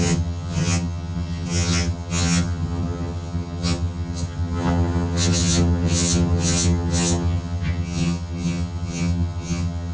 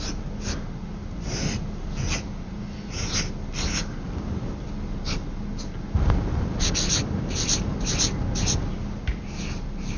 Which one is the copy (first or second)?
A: first